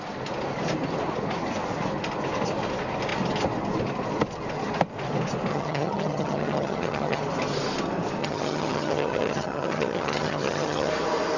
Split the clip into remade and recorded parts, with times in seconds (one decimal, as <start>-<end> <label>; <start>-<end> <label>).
0.0-5.5 recorded; 5.5-7.2 remade; 7.2-8.2 recorded; 8.2-10.9 remade; 10.9-11.4 recorded